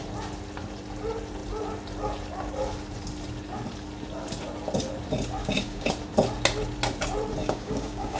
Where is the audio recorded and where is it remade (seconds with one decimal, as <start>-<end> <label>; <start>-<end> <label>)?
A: 0.0-5.4 recorded; 5.4-5.9 remade; 5.9-7.4 recorded; 7.4-8.2 remade